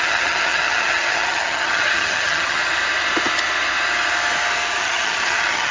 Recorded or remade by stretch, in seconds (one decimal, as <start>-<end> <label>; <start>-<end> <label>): 0.0-2.6 remade; 2.6-4.8 recorded; 4.8-5.7 remade